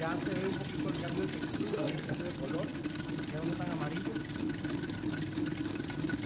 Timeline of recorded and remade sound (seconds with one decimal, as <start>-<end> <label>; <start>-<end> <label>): 0.0-1.5 recorded; 1.5-2.2 remade; 2.2-6.3 recorded